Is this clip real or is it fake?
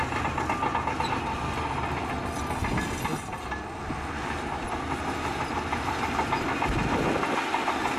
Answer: real